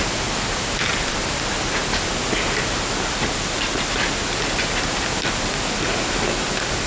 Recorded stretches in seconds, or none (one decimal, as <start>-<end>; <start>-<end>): 0.0-6.9